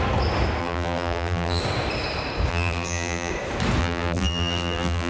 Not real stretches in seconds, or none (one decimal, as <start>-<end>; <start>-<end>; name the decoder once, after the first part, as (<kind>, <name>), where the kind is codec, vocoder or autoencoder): 0.6-1.6 (vocoder, BigVGAN v2); 2.5-3.3; 3.8-5.1